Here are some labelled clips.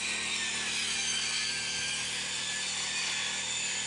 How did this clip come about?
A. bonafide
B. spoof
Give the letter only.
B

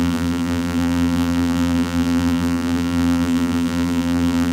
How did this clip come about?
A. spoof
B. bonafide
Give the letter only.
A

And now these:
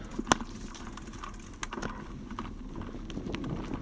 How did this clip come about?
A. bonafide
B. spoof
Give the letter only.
A